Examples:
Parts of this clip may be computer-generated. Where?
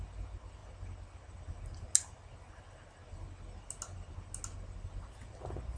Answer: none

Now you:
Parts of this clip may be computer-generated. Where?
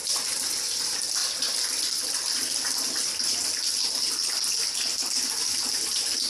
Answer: 0.0-0.6 (vocoder, BigVGAN v2); 1.2-3.5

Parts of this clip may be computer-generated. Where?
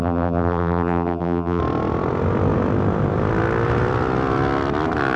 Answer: 0.0-1.6 (vocoder, BigVGAN v2)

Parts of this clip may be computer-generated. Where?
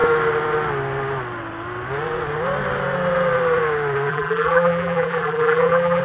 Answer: 4.1-6.0 (vocoder, BigVGAN v2)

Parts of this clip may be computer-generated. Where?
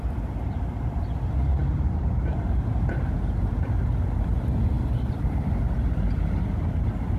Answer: none